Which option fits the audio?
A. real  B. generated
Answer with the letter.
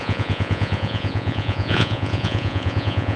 B